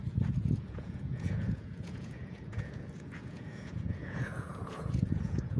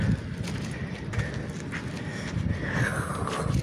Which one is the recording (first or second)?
second